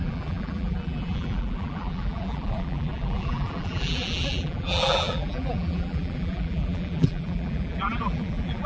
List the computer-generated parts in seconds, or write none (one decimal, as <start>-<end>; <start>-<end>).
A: 0.0-8.7